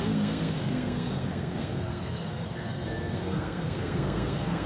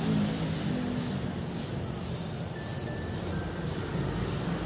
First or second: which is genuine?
second